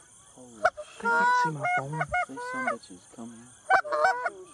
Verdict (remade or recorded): recorded